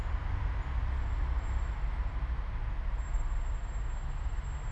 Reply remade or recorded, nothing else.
recorded